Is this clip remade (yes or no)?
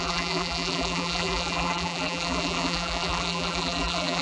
yes